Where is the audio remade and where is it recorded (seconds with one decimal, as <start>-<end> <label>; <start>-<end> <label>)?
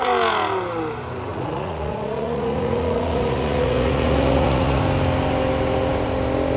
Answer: 0.0-1.3 recorded; 1.3-4.8 remade; 4.8-6.6 recorded